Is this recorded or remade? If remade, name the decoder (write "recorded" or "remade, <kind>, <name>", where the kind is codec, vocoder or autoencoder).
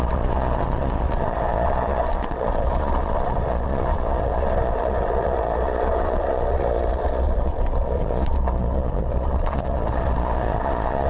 remade, vocoder, Vocos